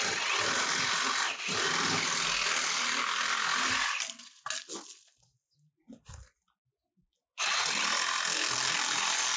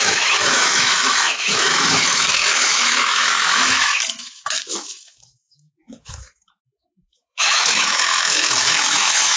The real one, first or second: first